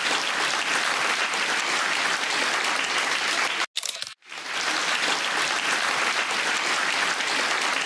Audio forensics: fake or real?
real